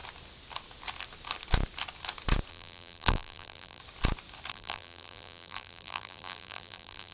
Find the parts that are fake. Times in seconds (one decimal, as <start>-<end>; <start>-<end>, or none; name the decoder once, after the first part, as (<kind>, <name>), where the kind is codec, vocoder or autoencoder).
2.5-3.8 (vocoder, BigVGAN v2); 4.5-7.1